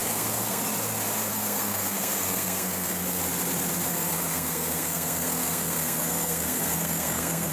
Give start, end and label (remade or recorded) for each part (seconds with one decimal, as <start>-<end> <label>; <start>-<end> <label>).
0.0-0.6 remade; 0.6-1.3 recorded; 1.3-3.2 remade; 3.2-3.9 recorded; 3.9-7.5 remade